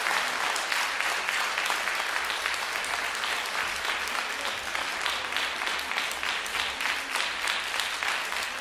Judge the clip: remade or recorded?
recorded